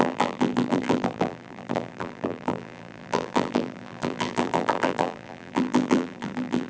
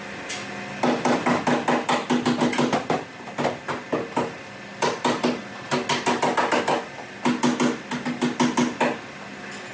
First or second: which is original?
second